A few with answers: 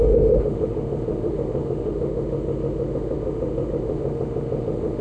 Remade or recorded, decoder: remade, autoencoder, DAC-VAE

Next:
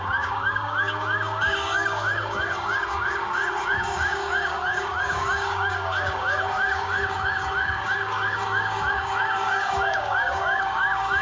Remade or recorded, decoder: remade, codec, DAC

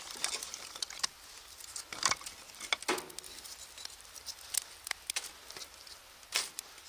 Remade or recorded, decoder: recorded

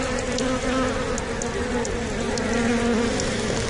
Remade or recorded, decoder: recorded